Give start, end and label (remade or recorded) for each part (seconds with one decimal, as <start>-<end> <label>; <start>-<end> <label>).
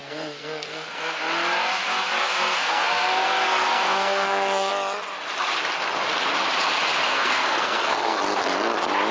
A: 0.0-1.2 remade; 1.2-2.2 recorded; 2.2-4.7 remade; 4.7-7.0 recorded; 7.0-8.2 remade; 8.2-9.1 recorded